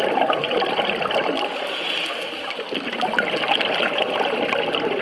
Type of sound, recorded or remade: recorded